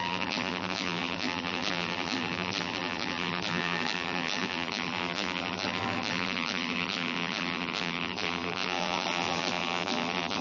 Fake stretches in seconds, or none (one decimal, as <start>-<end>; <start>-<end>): 0.0-10.4